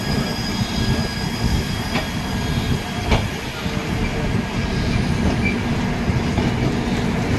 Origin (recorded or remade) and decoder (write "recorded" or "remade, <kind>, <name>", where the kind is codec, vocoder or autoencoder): recorded